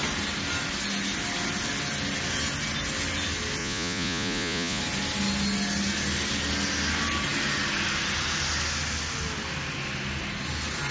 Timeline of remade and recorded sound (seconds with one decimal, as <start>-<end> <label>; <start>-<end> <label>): 0.0-3.6 recorded; 3.6-4.8 remade; 4.8-10.9 recorded